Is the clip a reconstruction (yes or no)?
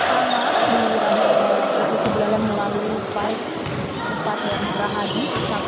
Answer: no